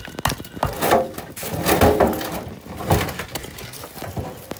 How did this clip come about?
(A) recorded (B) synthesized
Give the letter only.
A